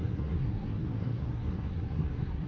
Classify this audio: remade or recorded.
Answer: remade